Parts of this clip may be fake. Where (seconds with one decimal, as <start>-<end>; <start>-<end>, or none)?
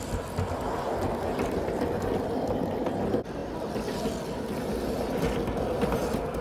none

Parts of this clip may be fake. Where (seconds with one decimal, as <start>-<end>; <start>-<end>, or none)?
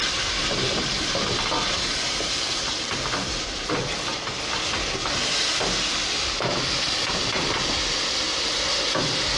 0.0-4.4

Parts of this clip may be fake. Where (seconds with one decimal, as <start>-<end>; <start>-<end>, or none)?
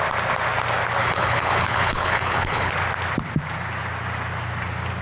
1.0-2.7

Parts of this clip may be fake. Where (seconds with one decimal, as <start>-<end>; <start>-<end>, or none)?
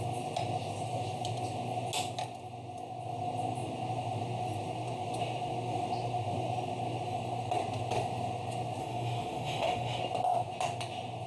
8.8-10.0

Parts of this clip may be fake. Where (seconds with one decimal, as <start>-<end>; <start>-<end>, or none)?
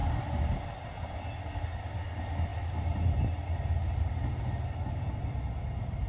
none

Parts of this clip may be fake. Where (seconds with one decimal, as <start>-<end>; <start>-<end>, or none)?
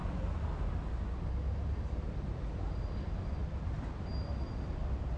none